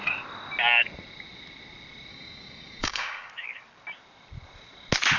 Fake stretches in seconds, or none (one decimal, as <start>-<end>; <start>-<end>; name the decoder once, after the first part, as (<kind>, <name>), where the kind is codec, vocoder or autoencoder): 2.1-3.3 (codec, DAC)